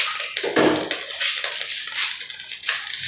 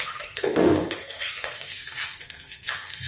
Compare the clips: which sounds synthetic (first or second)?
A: second